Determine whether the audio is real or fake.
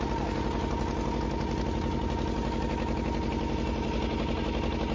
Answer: real